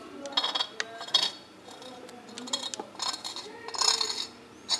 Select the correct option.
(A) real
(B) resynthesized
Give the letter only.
A